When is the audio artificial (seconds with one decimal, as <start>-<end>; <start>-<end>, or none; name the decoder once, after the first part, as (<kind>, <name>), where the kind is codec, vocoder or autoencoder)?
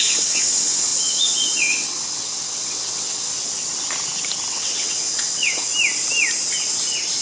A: 0.0-3.3 (vocoder, WaveNeXt); 4.5-5.7